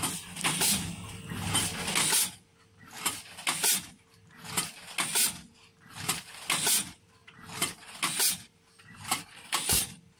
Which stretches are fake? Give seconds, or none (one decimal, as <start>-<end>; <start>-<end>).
none